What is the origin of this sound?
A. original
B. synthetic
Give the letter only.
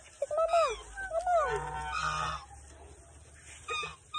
A